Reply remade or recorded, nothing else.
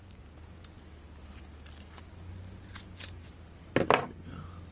recorded